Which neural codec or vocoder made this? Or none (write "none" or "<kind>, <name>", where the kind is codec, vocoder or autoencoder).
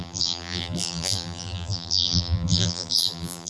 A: vocoder, BigVGAN v2